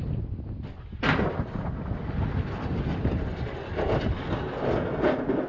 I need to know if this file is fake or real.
real